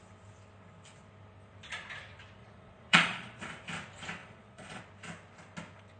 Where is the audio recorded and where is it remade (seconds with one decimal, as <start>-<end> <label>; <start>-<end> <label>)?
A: 0.0-2.4 recorded; 2.4-3.4 remade; 3.4-4.2 recorded; 4.2-4.8 remade; 4.8-6.0 recorded

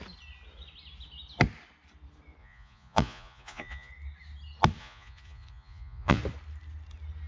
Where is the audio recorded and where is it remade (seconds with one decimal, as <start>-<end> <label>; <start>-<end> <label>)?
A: 0.0-2.4 recorded; 2.4-3.9 remade; 3.9-4.8 recorded; 4.8-6.2 remade; 6.2-7.3 recorded

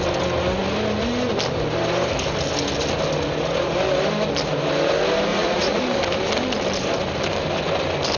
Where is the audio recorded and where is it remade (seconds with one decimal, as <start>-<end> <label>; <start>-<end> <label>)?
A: 0.0-5.3 recorded; 5.3-5.8 remade; 5.8-8.2 recorded

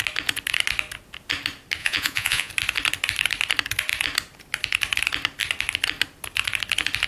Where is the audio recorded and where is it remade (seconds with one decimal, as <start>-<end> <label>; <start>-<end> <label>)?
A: 0.0-1.8 recorded; 1.8-2.5 remade; 2.5-7.1 recorded

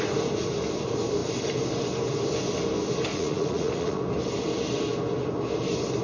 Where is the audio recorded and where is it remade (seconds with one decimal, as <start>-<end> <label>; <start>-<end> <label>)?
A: 0.0-3.1 recorded; 3.1-4.0 remade; 4.0-6.0 recorded

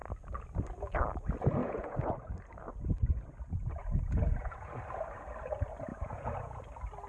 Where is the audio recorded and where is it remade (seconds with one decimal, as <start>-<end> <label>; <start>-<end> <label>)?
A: 0.0-1.6 recorded; 1.6-2.1 remade; 2.1-3.8 recorded; 3.8-4.7 remade; 4.7-5.9 recorded; 5.9-6.6 remade; 6.6-7.1 recorded